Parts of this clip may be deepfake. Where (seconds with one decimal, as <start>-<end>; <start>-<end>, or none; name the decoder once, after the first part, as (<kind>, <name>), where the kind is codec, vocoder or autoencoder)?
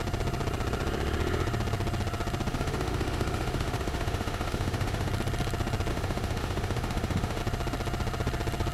2.5-5.1 (autoencoder, DAC-VAE); 5.9-7.4